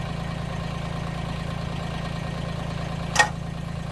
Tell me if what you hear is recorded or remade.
recorded